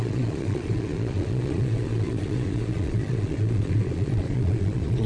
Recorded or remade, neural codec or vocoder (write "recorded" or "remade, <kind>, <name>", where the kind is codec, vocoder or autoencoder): remade, vocoder, Vocos